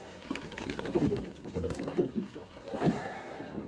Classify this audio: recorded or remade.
remade